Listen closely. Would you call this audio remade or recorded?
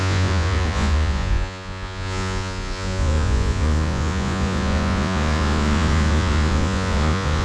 remade